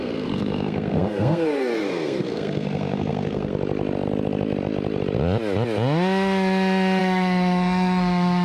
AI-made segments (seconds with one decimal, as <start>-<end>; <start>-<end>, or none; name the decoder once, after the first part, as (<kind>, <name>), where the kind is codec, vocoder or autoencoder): 0.0-3.5 (codec, SNAC); 7.0-8.4